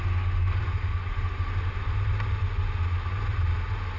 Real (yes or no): yes